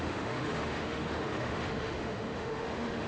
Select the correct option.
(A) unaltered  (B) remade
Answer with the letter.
B